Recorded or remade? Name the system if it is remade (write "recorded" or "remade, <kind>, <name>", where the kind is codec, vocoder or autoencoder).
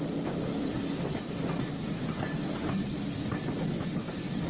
recorded